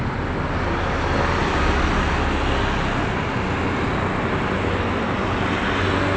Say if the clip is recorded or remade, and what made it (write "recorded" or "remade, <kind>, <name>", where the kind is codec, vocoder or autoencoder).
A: recorded